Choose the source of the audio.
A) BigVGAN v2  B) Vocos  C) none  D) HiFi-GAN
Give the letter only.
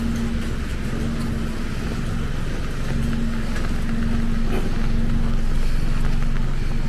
C